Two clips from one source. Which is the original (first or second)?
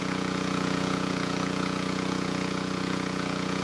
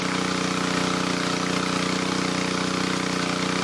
second